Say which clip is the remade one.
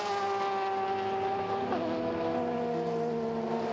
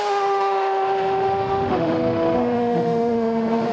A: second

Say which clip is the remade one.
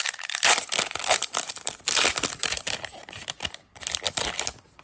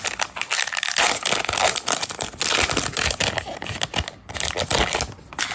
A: first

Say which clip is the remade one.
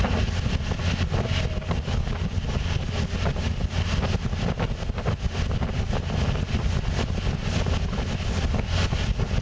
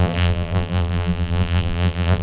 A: second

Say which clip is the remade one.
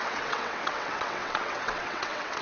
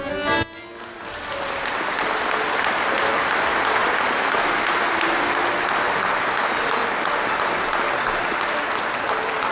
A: first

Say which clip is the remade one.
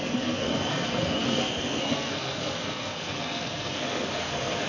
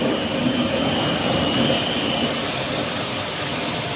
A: first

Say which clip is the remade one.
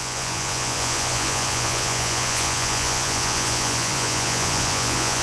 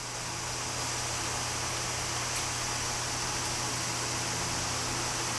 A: first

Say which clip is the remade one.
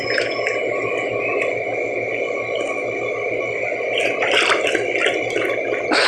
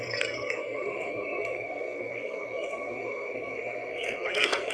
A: second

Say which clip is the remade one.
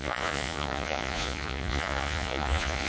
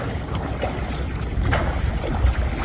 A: first